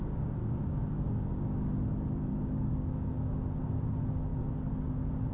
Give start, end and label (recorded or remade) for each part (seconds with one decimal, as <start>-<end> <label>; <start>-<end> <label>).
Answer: 0.0-0.4 recorded; 0.4-1.7 remade; 1.7-2.3 recorded; 2.3-3.1 remade; 3.1-5.3 recorded